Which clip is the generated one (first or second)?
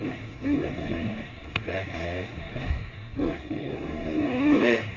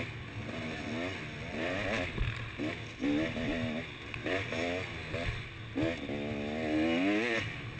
first